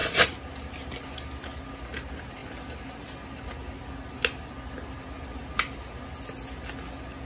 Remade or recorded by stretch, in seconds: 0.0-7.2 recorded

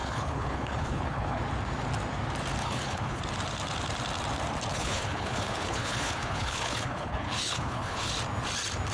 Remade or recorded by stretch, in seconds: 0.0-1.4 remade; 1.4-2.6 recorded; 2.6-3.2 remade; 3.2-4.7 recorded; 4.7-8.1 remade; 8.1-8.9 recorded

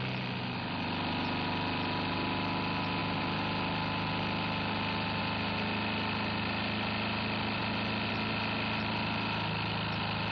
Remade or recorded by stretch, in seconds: 0.0-10.3 recorded

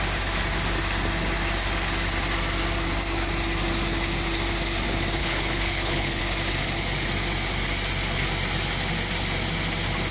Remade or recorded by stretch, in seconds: 0.0-5.2 recorded; 5.2-6.2 remade; 6.2-10.1 recorded

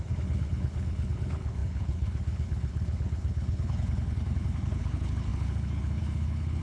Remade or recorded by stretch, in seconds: 0.0-6.6 remade